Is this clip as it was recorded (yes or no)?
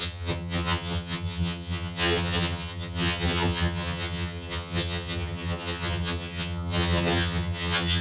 no